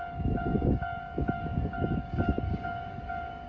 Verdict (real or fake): fake